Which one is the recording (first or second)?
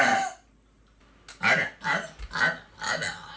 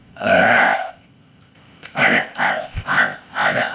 first